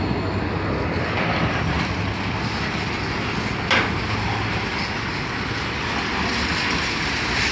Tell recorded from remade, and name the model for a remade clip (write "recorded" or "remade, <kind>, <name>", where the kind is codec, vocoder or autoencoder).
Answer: recorded